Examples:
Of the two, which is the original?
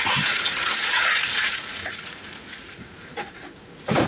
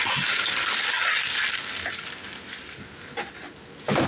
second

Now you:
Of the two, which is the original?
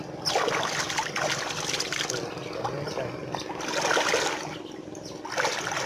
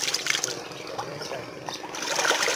first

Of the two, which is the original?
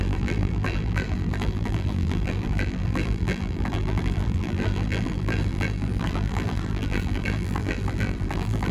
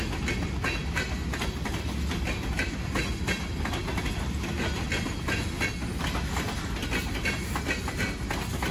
second